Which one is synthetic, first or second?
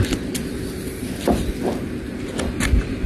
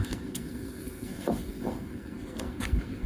second